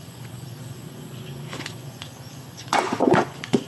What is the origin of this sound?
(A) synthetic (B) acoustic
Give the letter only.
A